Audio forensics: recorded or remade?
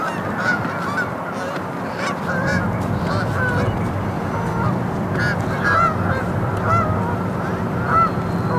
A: recorded